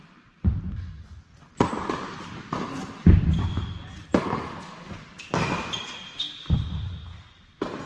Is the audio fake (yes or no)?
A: no